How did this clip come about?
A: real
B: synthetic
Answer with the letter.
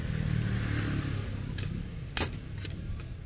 A